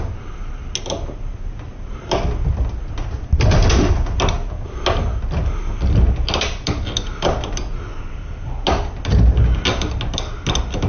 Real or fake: real